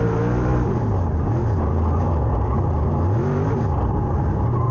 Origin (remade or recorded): recorded